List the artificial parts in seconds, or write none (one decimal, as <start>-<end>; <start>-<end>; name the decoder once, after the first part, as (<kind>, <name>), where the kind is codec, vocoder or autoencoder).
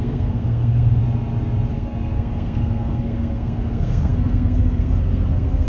0.0-1.0 (codec, SNAC); 1.7-5.7